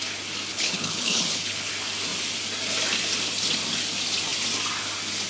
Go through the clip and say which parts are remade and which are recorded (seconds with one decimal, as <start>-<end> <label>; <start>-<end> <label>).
0.0-0.5 recorded; 0.5-1.7 remade; 1.7-5.3 recorded